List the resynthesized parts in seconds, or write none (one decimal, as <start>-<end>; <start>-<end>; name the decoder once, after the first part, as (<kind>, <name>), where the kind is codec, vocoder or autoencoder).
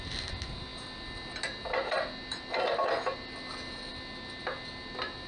none